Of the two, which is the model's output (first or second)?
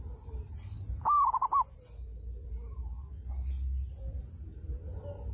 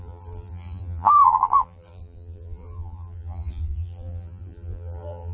second